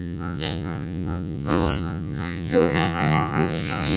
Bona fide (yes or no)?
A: no